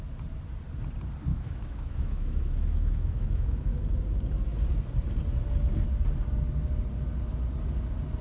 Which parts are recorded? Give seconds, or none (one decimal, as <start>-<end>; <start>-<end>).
0.0-1.3; 3.8-8.2